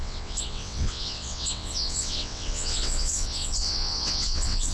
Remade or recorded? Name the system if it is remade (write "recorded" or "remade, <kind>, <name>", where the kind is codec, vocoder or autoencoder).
remade, vocoder, WaveNeXt